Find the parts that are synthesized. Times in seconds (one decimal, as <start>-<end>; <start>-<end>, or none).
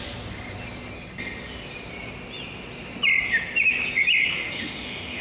4.3-5.2